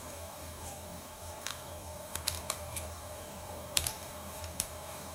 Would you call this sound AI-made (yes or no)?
yes